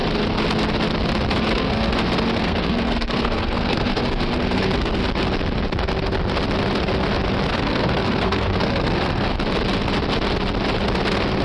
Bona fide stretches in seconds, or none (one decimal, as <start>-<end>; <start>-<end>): 0.0-1.4; 1.9-2.4; 5.0-7.5; 9.3-11.4